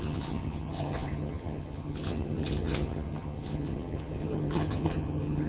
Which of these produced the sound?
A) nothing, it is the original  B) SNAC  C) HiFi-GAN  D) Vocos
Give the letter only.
C